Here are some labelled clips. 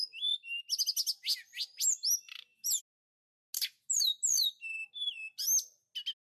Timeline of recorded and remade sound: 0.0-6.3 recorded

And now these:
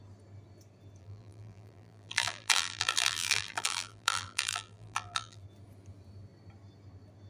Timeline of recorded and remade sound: 0.0-1.0 recorded; 1.0-5.4 remade; 5.4-7.3 recorded

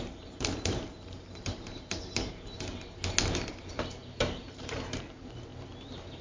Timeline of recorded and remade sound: 0.0-2.7 remade; 2.7-3.5 recorded; 3.5-5.5 remade; 5.5-6.2 recorded